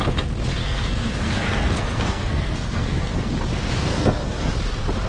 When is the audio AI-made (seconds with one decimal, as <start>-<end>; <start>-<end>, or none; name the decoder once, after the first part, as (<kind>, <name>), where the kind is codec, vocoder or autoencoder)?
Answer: 0.6-3.3 (codec, SNAC); 3.9-4.5